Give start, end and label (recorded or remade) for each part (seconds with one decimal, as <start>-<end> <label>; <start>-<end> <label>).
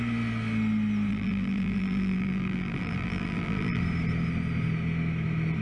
0.0-1.1 recorded; 1.1-3.8 remade; 3.8-5.6 recorded